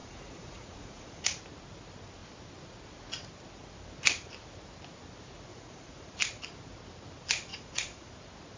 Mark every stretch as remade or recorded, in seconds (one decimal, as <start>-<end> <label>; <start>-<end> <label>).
0.0-1.4 remade; 1.4-5.5 recorded; 5.5-6.1 remade; 6.1-7.5 recorded; 7.5-8.1 remade; 8.1-8.6 recorded